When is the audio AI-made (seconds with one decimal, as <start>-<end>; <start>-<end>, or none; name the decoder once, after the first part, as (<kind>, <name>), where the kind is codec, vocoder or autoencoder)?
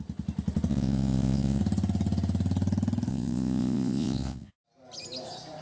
0.7-1.6 (vocoder, Vocos); 3.1-4.5